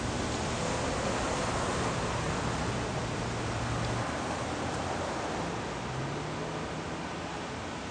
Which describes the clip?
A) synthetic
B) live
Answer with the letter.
B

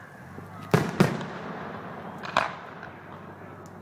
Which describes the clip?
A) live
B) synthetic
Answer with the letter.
A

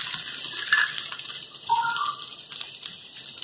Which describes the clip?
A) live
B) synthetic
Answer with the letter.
A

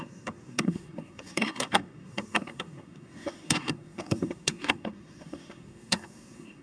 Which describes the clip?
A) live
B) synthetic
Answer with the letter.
B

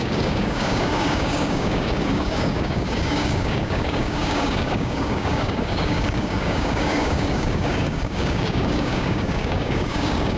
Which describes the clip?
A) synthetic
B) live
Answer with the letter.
A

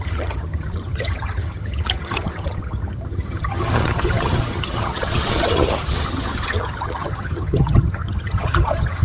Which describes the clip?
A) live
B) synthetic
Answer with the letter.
B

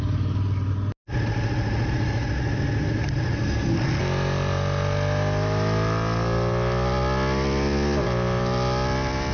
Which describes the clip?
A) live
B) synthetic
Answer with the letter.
A